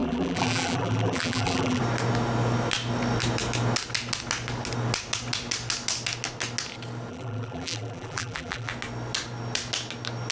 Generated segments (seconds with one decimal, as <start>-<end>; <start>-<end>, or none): 0.0-1.8; 7.1-8.7